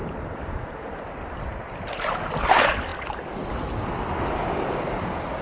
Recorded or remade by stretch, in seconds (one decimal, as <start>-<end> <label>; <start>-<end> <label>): 0.0-5.4 recorded